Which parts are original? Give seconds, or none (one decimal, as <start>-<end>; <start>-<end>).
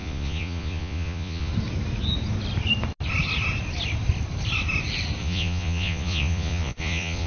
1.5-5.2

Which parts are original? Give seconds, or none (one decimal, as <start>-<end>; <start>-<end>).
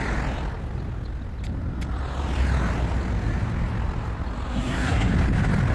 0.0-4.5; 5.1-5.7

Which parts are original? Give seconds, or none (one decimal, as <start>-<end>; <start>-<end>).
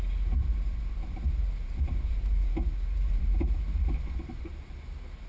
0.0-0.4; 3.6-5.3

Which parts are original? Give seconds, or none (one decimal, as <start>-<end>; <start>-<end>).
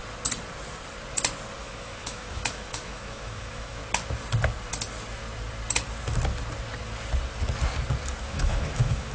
0.0-1.6; 3.8-8.2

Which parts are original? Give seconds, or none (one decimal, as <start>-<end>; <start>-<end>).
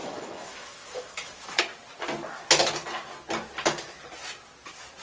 1.6-5.0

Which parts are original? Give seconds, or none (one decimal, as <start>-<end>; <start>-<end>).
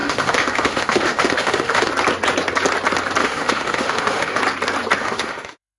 1.9-3.2; 4.4-5.0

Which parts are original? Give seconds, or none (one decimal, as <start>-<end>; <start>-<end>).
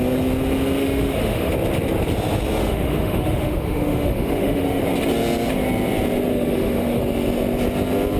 0.0-0.8; 1.5-2.6; 4.8-6.3; 7.0-8.2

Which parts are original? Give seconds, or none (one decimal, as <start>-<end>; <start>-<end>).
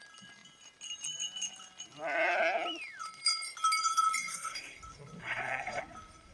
0.0-4.3; 4.8-5.2; 5.8-6.3